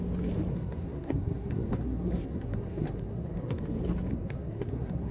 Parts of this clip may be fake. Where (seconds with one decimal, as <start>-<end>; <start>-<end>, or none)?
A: 0.5-3.6; 4.1-5.1